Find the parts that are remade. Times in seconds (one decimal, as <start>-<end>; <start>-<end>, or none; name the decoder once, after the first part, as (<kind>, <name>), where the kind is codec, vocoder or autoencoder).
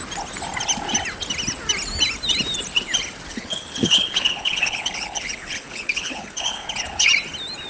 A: 3.3-7.1 (codec, HILCodec)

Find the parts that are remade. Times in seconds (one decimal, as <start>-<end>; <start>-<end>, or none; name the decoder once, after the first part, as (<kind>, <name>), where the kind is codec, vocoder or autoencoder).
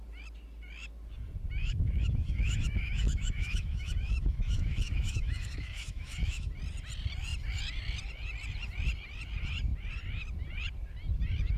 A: 1.6-6.5 (autoencoder, DAC-VAE)